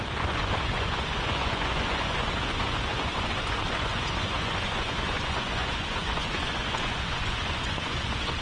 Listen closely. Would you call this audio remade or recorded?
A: remade